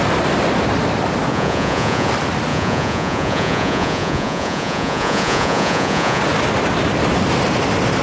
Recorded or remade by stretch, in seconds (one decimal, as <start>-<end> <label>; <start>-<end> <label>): 0.0-1.3 recorded; 1.3-2.1 remade; 2.1-2.5 recorded; 2.5-6.2 remade; 6.2-8.0 recorded